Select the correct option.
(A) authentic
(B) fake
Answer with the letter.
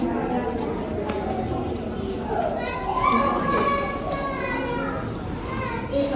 A